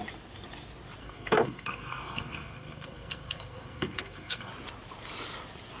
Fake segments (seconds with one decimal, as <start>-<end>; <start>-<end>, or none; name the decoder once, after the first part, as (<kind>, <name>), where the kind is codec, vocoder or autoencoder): 1.0-4.5 (codec, SNAC)